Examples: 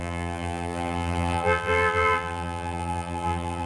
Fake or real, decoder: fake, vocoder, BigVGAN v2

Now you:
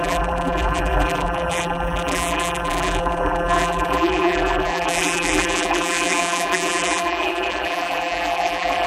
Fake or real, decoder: fake, vocoder, BigVGAN v2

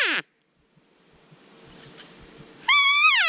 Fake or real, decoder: fake, vocoder, BigVGAN v2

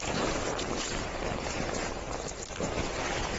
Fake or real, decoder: real